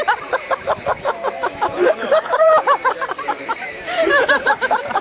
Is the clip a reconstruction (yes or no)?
yes